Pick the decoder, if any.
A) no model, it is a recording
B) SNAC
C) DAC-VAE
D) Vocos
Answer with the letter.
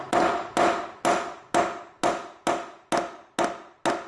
A